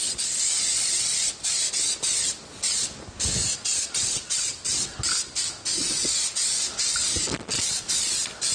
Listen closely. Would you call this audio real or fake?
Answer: real